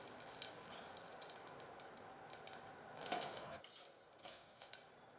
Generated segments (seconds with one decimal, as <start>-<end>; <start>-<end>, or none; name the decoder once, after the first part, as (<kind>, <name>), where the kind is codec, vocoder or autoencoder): 3.0-3.6 (autoencoder, DAC-VAE); 4.2-4.7